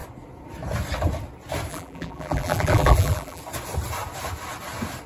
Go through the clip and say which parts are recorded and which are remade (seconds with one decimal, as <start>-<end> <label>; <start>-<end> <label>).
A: 0.0-1.7 recorded; 1.7-3.4 remade; 3.4-5.1 recorded